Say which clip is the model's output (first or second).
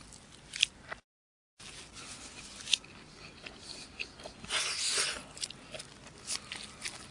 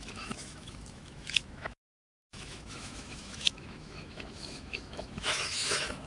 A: second